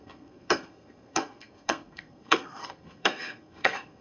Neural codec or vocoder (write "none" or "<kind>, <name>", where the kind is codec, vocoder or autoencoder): codec, SNAC